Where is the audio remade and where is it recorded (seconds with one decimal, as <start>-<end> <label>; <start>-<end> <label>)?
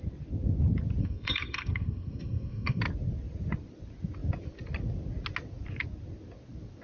0.0-1.0 recorded; 1.0-2.8 remade; 2.8-6.8 recorded